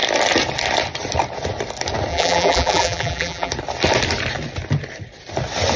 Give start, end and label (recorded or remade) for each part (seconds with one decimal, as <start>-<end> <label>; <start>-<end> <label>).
0.0-2.1 recorded; 2.1-3.5 remade; 3.5-5.8 recorded